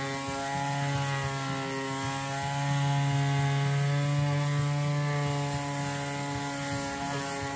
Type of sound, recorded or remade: recorded